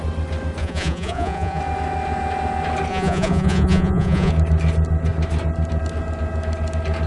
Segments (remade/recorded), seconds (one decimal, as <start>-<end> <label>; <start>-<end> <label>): 0.0-0.6 recorded; 0.6-1.6 remade; 1.6-2.9 recorded; 2.9-4.3 remade; 4.3-7.1 recorded